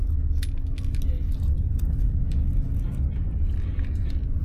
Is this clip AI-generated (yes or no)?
no